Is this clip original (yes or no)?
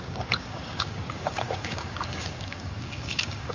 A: no